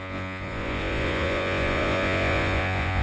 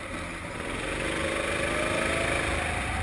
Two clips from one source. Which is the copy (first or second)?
first